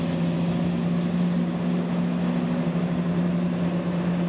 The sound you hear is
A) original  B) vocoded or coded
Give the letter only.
A